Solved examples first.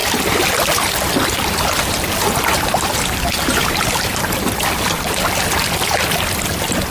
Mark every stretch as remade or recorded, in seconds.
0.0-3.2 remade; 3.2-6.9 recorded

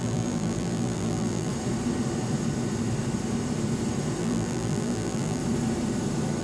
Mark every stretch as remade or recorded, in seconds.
0.0-1.5 remade; 1.5-4.2 recorded; 4.2-5.4 remade; 5.4-6.4 recorded